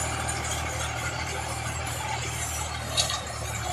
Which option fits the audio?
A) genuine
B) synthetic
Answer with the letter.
A